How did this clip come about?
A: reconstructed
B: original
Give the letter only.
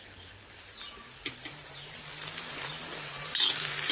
B